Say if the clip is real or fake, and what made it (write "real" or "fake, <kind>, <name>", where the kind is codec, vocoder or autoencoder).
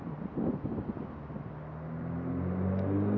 real